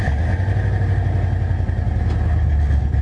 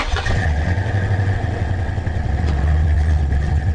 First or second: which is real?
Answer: first